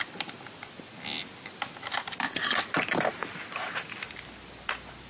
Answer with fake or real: real